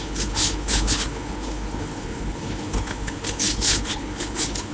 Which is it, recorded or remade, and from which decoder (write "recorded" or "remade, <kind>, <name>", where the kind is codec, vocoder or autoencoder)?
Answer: remade, codec, HILCodec